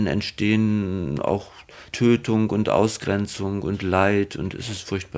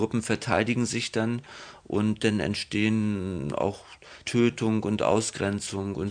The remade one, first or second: second